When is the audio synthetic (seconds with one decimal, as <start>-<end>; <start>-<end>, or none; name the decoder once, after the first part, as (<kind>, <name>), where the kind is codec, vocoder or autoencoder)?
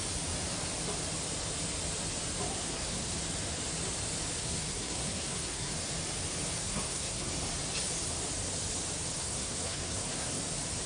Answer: 2.5-3.2 (codec, SNAC); 4.4-5.7; 6.6-7.3; 9.2-10.4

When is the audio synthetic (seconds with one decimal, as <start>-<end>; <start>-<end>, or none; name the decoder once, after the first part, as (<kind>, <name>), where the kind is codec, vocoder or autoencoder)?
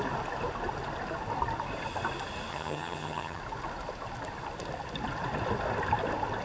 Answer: 2.5-3.4 (vocoder, HiFi-GAN)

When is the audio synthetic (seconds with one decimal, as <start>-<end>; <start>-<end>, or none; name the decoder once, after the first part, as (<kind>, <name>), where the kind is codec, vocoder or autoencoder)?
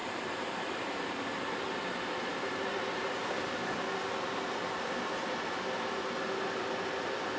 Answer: 0.0-1.0 (vocoder, BigVGAN v2); 2.3-3.0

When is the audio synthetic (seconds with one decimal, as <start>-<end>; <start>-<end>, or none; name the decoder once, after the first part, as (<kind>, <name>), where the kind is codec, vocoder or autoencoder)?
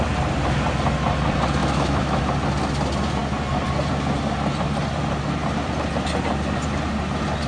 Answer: 1.6-2.2 (autoencoder, DAC-VAE)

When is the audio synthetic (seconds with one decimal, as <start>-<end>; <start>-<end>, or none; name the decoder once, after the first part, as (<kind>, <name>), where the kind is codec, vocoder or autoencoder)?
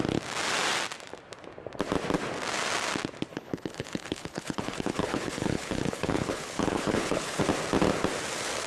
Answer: 3.3-7.4 (codec, HILCodec)